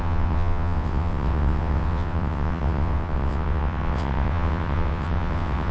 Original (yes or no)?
no